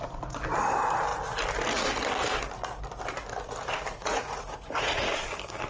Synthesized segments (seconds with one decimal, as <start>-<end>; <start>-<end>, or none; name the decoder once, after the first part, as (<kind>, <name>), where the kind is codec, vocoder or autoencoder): 4.0-5.1 (vocoder, Vocos)